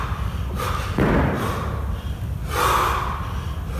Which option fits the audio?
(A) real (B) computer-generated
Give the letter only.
A